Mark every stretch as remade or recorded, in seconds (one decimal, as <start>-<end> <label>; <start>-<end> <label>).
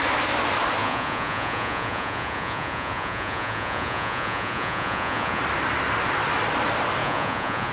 0.0-0.8 recorded; 0.8-5.4 remade; 5.4-7.0 recorded; 7.0-7.7 remade